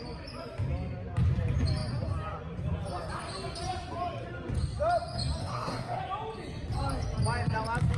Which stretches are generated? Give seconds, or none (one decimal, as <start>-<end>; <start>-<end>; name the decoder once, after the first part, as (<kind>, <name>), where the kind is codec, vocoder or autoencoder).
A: 5.4-6.0 (codec, SNAC)